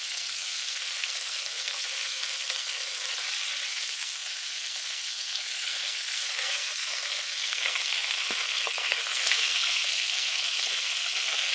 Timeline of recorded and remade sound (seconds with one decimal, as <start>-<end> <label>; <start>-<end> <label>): 0.0-3.1 remade; 3.1-3.7 recorded; 3.7-11.5 remade